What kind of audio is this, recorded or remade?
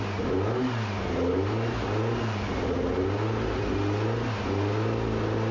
recorded